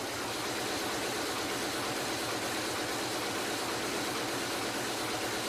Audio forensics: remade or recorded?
recorded